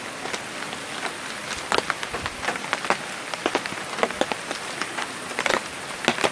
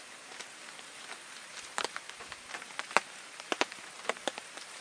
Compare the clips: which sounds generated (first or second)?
second